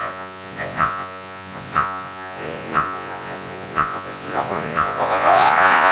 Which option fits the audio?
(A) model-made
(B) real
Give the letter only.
A